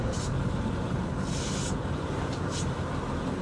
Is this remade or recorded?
remade